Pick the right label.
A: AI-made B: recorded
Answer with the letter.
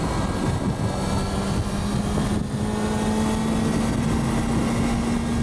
B